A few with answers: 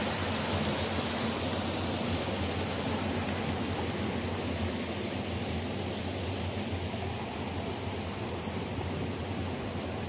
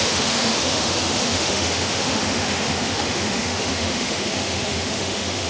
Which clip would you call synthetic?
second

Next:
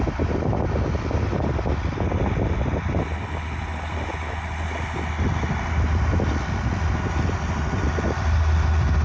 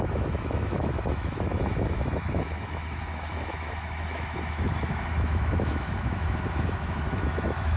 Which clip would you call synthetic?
second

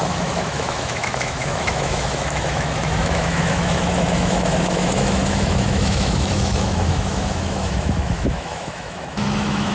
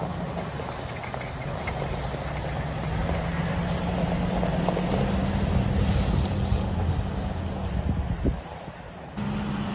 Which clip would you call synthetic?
first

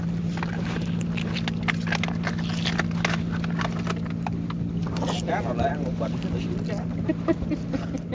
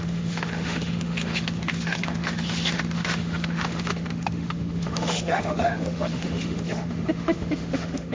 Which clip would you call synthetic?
second